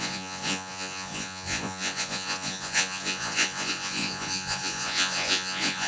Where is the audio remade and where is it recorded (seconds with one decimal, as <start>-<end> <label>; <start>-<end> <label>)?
0.0-5.9 remade